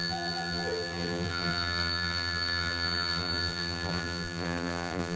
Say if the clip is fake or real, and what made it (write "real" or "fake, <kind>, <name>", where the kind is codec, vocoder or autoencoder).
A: fake, vocoder, BigVGAN v2